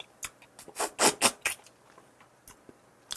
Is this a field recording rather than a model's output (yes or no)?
yes